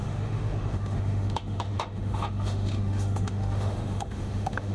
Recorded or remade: remade